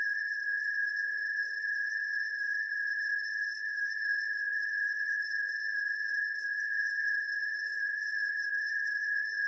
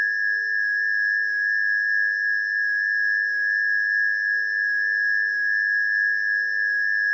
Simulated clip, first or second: first